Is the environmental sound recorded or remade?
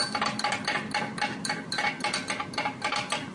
recorded